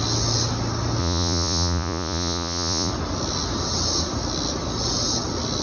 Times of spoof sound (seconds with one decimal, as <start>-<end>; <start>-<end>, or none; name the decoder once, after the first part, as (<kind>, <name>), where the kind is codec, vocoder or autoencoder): 1.0-2.9 (vocoder, Vocos)